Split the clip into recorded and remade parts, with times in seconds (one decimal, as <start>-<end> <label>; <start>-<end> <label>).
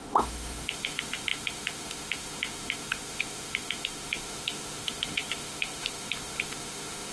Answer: 0.0-7.1 remade